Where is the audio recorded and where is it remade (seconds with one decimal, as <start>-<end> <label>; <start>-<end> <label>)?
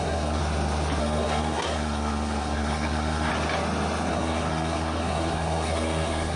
0.0-0.4 remade; 0.4-1.0 recorded; 1.0-3.3 remade; 3.3-4.1 recorded; 4.1-6.4 remade